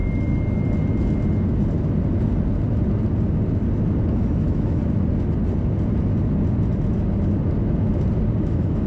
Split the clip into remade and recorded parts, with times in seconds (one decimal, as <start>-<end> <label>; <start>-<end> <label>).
0.0-4.1 recorded; 4.1-4.8 remade; 4.8-8.4 recorded; 8.4-8.9 remade